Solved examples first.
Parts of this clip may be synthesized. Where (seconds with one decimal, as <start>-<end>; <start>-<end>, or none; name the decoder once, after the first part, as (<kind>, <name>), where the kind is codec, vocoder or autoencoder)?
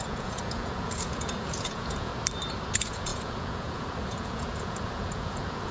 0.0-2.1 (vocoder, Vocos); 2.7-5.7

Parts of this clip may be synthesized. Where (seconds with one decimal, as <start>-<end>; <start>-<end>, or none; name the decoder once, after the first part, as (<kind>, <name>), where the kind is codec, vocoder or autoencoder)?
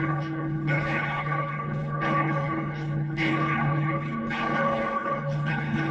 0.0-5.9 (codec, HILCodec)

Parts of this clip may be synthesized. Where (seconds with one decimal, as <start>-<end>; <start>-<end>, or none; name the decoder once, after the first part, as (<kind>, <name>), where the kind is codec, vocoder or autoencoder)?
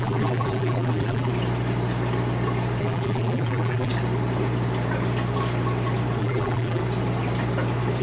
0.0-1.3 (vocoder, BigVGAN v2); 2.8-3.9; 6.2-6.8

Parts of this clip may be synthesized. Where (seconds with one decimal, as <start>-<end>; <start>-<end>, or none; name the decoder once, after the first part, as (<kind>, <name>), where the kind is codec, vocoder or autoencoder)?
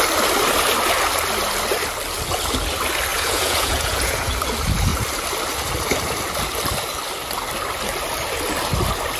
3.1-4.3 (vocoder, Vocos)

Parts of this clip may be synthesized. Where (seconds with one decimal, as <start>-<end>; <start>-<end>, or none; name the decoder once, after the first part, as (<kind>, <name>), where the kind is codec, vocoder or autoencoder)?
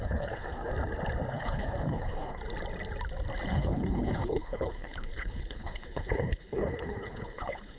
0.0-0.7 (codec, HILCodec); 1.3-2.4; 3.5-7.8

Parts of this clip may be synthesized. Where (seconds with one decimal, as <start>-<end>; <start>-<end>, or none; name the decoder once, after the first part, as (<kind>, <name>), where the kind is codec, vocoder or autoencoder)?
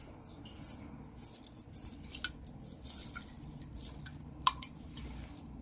3.7-5.6 (vocoder, BigVGAN v2)